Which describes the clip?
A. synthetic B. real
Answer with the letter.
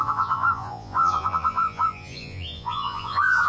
A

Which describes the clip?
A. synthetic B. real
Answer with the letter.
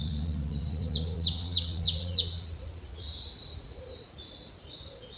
A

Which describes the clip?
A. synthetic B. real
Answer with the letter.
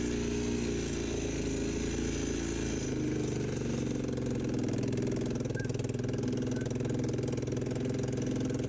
B